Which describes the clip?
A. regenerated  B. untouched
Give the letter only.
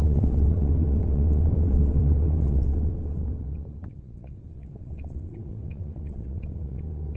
A